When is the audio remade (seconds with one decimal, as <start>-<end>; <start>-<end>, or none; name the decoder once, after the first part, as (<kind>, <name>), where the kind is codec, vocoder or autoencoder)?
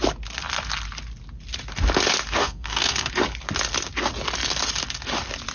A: 2.4-3.1 (codec, SNAC)